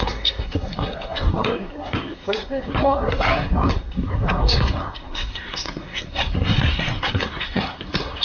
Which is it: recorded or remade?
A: remade